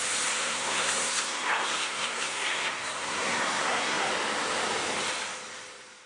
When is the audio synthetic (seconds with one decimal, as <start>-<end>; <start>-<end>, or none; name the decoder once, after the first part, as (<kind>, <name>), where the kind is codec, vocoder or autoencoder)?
0.4-4.1 (codec, SNAC)